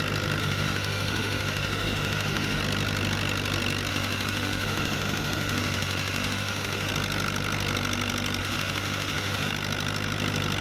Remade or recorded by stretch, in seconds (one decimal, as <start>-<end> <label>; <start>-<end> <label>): 0.0-0.4 recorded; 0.4-2.6 remade; 2.6-3.9 recorded; 3.9-6.9 remade; 6.9-8.4 recorded; 8.4-9.5 remade; 9.5-10.6 recorded